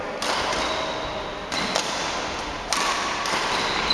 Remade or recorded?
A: recorded